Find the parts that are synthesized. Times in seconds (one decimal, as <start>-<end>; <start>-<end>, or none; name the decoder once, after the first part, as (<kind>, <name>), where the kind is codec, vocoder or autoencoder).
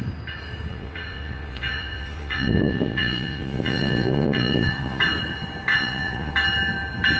0.7-5.0 (vocoder, Vocos); 5.7-6.3